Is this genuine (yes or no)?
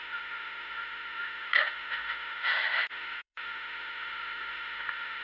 no